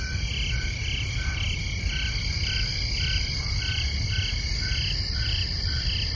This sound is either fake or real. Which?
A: real